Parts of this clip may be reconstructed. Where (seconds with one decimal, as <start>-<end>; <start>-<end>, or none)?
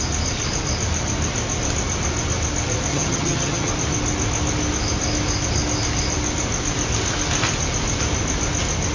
2.9-3.7